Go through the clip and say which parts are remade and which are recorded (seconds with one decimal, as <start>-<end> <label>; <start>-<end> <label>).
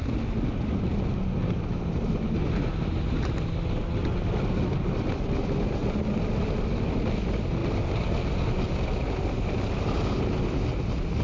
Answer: 0.0-11.2 recorded